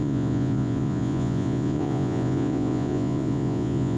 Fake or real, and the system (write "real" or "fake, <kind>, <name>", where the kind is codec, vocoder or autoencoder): fake, vocoder, Vocos